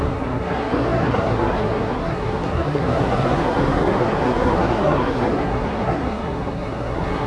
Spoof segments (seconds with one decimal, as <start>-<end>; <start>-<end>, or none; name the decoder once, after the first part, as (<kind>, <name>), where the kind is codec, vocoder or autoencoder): 0.0-7.3 (codec, SNAC)